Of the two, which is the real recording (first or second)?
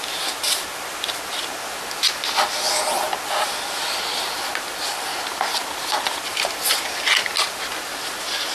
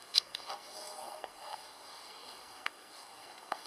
first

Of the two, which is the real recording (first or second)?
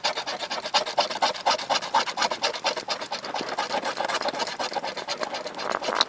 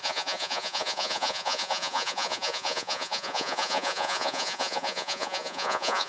first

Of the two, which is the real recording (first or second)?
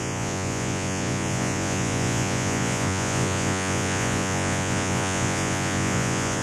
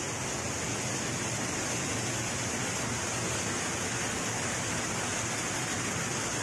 second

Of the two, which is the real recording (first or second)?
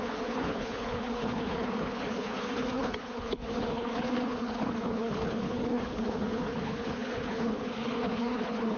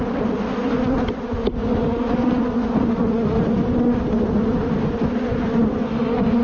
second